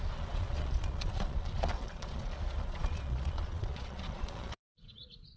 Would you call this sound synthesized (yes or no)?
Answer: yes